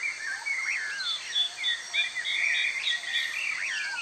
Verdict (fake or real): real